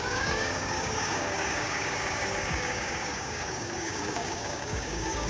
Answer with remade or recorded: remade